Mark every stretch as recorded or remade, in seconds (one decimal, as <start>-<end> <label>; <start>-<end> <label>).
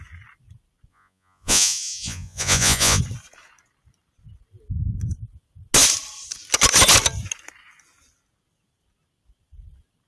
0.0-0.9 recorded; 0.9-3.0 remade; 3.0-10.1 recorded